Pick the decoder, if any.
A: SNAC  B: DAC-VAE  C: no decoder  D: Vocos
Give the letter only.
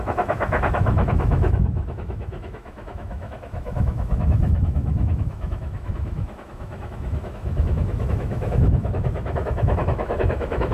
B